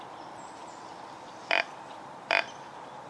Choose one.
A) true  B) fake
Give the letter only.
A